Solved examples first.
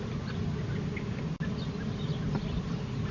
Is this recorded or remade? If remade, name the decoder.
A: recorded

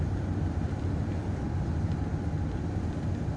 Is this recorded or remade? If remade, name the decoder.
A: recorded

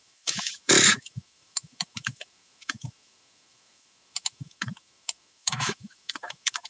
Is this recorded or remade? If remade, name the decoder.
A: remade, autoencoder, DAC-VAE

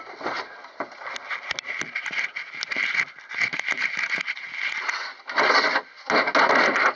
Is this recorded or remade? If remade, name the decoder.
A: recorded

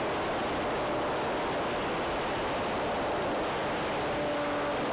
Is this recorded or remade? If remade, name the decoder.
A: recorded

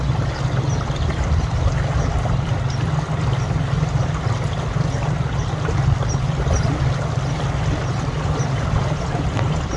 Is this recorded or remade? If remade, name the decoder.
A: recorded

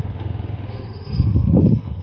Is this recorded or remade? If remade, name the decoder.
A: remade, autoencoder, DAC-VAE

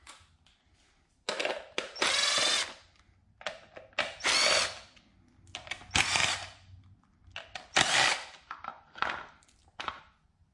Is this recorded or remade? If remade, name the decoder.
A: recorded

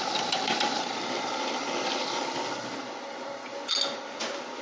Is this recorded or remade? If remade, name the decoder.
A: recorded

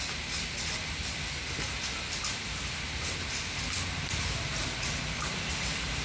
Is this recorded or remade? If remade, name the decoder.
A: recorded